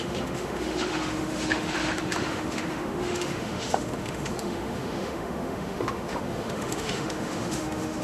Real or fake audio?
fake